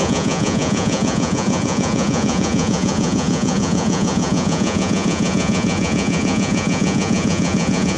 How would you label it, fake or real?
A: fake